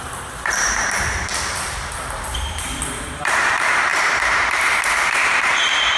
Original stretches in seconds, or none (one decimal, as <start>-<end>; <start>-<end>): none